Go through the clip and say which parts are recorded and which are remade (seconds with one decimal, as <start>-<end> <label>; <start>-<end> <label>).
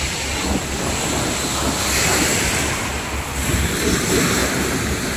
0.0-4.4 recorded; 4.4-5.2 remade